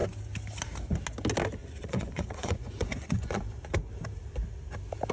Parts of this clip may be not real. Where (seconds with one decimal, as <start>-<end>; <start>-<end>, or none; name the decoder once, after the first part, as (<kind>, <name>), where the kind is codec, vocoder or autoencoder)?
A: 1.6-3.4 (vocoder, Vocos)